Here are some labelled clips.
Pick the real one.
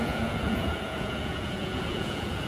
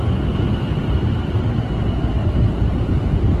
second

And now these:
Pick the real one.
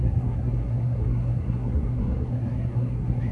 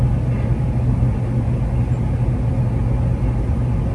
second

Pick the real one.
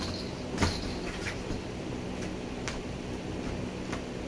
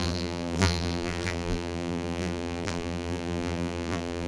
first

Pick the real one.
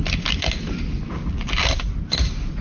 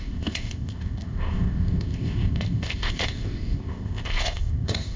first